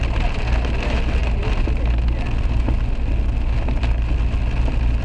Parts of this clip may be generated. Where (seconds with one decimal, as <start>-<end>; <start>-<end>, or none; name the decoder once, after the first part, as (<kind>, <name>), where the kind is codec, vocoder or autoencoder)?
none